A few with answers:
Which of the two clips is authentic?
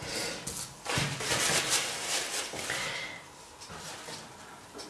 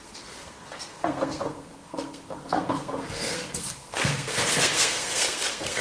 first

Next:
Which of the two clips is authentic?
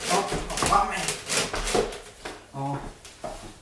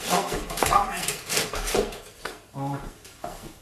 first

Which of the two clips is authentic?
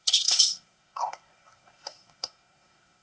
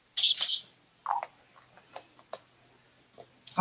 second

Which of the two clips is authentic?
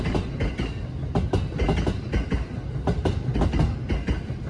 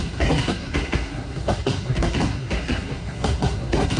first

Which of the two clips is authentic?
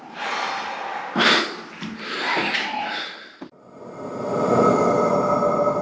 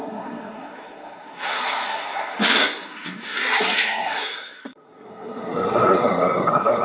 first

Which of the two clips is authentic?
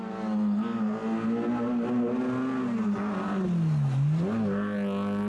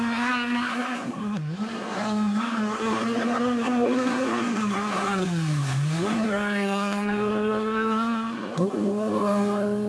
first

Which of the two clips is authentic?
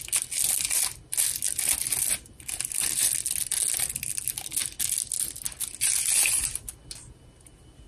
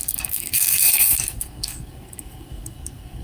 first